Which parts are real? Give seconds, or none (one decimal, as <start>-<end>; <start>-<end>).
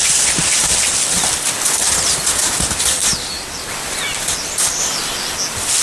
0.0-5.8